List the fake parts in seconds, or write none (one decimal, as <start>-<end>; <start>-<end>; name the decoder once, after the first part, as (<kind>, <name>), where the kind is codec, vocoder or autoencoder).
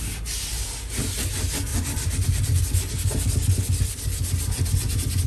1.7-2.6 (vocoder, BigVGAN v2); 3.4-4.0